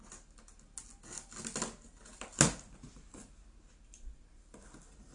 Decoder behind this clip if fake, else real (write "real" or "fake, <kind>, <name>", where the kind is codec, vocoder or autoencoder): real